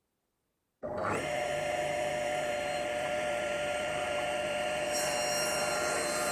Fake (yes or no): yes